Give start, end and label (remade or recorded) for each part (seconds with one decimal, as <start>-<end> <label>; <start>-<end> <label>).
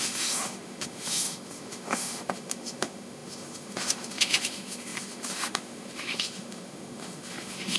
0.0-7.8 remade